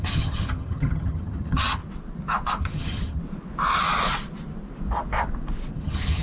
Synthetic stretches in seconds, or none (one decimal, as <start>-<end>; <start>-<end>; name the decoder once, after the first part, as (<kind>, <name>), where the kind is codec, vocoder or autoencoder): 0.0-1.8 (vocoder, HiFi-GAN); 2.6-3.2; 5.7-6.2